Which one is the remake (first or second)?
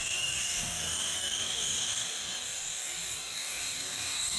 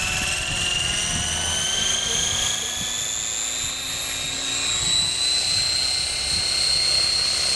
first